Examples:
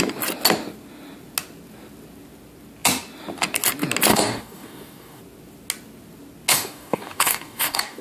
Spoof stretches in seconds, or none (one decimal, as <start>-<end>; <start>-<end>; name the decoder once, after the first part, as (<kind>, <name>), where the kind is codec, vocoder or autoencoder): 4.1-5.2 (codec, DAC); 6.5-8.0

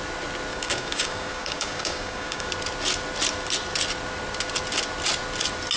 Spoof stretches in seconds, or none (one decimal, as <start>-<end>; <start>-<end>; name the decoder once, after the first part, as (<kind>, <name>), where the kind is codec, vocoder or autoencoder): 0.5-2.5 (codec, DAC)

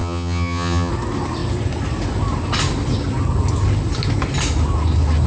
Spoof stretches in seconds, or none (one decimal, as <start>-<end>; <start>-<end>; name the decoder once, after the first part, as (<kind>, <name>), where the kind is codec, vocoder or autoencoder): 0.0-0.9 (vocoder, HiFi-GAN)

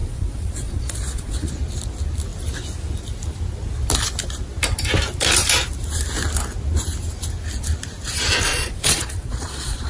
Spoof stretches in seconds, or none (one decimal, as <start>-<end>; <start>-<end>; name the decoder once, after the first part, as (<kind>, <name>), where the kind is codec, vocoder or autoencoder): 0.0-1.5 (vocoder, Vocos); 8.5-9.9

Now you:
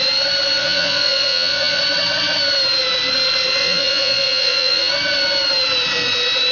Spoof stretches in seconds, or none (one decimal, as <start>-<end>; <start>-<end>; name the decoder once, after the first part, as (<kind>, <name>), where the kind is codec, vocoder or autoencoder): 0.6-1.8 (vocoder, Vocos); 3.6-4.9

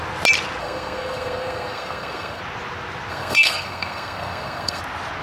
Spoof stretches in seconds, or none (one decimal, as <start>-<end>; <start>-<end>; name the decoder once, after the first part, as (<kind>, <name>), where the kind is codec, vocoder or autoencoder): 0.6-2.4 (codec, SNAC); 3.1-4.8